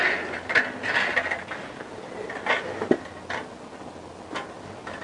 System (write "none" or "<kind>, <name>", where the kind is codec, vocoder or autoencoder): none